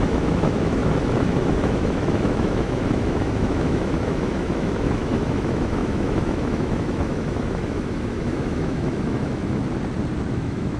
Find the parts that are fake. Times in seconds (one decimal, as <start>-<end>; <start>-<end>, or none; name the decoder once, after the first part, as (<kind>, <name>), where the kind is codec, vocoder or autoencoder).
0.0-9.6 (autoencoder, DAC-VAE); 10.3-10.8